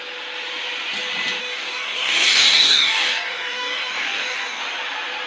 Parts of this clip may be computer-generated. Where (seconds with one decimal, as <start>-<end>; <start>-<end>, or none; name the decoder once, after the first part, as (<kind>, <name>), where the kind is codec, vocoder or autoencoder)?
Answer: 1.4-4.6 (codec, DAC)

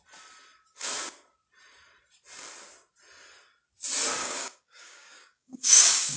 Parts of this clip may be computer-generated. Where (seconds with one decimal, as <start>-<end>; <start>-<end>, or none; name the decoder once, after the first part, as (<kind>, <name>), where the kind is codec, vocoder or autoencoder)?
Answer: 4.2-6.2 (codec, DAC)

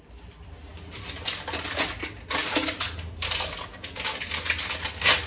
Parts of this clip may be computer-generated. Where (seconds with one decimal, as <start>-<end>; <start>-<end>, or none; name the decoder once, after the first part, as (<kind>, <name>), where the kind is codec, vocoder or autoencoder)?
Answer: none

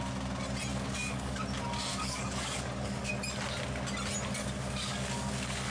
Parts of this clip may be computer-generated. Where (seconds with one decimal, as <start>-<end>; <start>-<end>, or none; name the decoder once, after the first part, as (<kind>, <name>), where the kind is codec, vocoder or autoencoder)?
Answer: 0.7-1.4 (codec, DAC); 1.9-3.1; 4.4-5.7